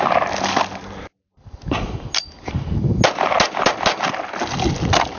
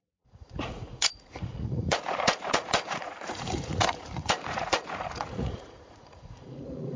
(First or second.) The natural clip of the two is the first